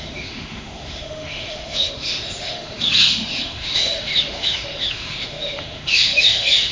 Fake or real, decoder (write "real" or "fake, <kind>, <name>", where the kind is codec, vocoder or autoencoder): fake, autoencoder, DAC-VAE